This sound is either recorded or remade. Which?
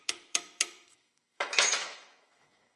remade